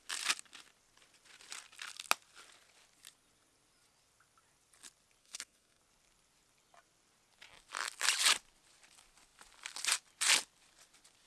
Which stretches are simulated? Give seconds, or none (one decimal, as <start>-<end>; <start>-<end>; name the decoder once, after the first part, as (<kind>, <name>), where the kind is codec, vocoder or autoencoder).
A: 5.2-5.8 (codec, SNAC)